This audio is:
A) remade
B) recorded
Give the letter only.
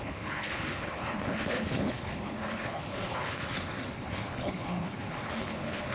A